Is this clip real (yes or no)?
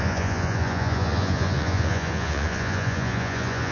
no